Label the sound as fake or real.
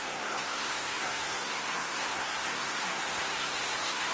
fake